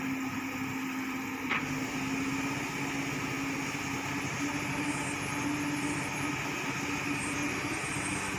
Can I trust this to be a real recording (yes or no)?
yes